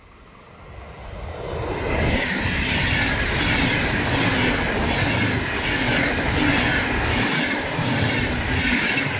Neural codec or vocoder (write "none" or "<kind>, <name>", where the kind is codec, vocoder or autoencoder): none